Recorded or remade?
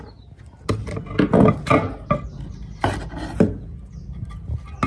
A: recorded